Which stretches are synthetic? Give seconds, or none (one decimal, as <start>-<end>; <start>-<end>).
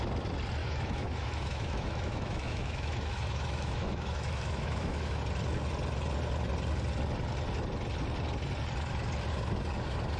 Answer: 0.6-5.2